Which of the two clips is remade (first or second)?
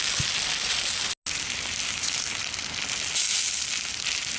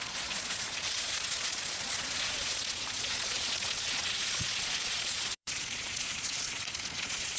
second